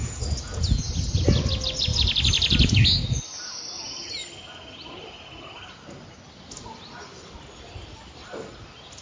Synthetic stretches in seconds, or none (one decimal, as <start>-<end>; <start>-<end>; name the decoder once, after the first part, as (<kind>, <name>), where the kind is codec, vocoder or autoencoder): 0.0-0.8 (vocoder, Vocos)